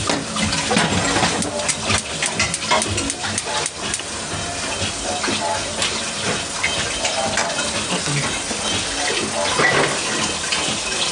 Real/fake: real